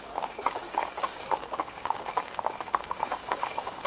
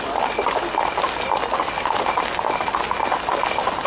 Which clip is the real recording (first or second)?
second